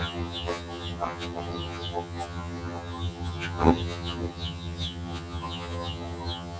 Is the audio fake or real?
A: fake